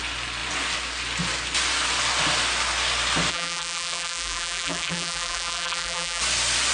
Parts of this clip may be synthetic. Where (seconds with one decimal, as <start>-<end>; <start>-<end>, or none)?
3.3-6.2